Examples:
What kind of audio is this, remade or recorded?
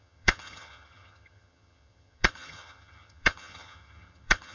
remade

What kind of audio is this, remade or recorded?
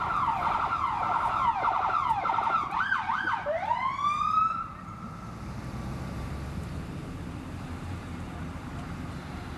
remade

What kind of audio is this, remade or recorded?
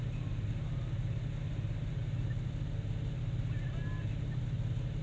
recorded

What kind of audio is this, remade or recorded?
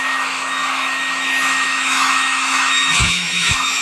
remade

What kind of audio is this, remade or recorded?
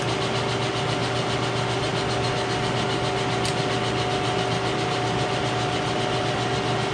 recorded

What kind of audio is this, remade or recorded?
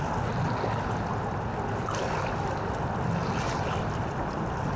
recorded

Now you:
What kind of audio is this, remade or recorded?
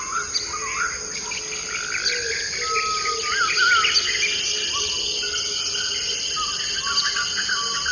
recorded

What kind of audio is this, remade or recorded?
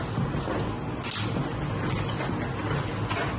recorded